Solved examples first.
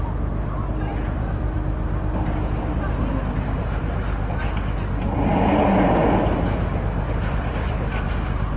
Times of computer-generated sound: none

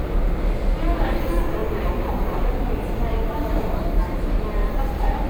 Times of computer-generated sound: 3.3-3.8 (vocoder, BigVGAN v2)

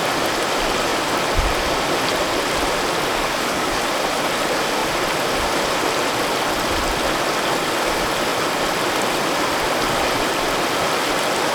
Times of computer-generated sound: 3.1-3.8 (codec, DAC)

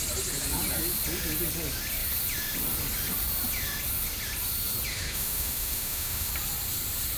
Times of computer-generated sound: 4.9-6.3 (autoencoder, DAC-VAE)

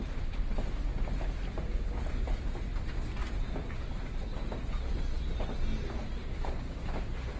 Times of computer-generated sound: none

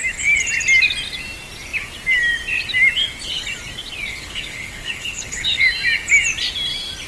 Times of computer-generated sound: 4.1-5.6 (codec, HILCodec)

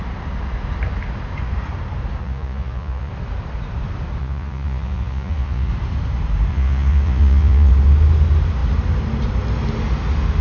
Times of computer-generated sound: 2.2-3.1 (vocoder, Vocos); 4.2-5.7; 6.5-7.7

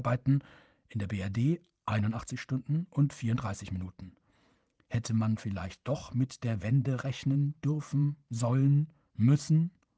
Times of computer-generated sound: 4.1-10.0 (vocoder, Vocos)